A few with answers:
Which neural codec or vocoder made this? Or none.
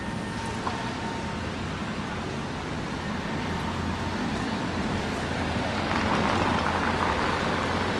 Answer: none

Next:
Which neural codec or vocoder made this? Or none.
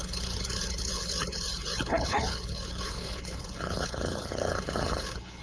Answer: codec, HILCodec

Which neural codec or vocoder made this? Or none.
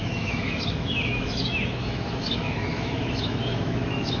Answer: autoencoder, DAC-VAE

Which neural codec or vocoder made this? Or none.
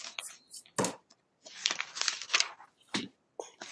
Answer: none